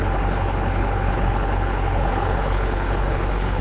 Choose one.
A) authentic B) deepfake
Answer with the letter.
B